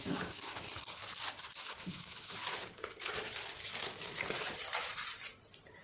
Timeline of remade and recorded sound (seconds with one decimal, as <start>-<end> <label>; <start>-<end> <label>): 0.0-0.5 remade; 0.5-1.6 recorded; 1.6-2.5 remade; 2.5-5.8 recorded